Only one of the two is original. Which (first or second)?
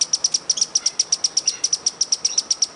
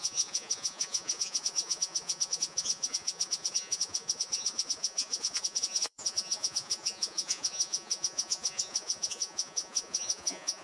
first